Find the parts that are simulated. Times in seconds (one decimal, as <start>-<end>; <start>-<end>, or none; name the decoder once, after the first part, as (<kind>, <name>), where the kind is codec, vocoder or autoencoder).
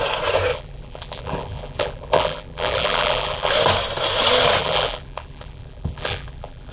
0.5-3.5 (vocoder, BigVGAN v2); 4.6-6.7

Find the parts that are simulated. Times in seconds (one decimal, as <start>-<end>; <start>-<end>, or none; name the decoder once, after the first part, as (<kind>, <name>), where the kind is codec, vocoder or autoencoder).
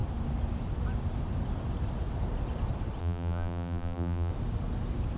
3.0-4.3 (vocoder, BigVGAN v2)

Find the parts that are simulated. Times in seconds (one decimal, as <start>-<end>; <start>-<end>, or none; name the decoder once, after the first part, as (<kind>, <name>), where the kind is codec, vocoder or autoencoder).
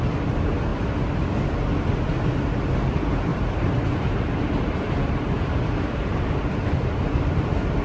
3.3-6.9 (vocoder, BigVGAN v2)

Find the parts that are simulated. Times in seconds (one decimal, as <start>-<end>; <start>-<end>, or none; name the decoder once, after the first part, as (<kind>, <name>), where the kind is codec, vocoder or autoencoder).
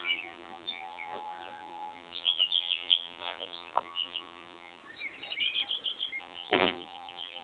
0.0-4.8 (vocoder, BigVGAN v2); 6.2-7.4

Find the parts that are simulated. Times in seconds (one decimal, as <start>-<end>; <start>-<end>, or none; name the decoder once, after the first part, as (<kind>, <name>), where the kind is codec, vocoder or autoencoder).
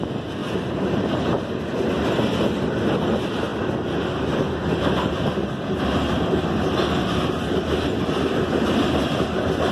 0.4-1.6 (vocoder, BigVGAN v2)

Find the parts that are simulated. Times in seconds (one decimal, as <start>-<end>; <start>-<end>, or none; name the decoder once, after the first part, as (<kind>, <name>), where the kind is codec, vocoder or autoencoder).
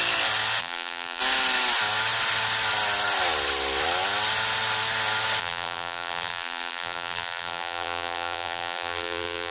0.6-1.2 (vocoder, BigVGAN v2); 5.4-9.5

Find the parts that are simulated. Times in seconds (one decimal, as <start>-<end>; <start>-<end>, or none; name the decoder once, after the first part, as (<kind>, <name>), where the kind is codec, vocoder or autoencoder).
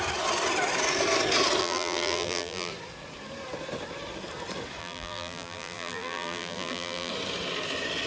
1.6-2.7 (vocoder, BigVGAN v2); 4.8-7.1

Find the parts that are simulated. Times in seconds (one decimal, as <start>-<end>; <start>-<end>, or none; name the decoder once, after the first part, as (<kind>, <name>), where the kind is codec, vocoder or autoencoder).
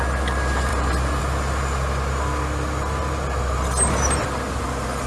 none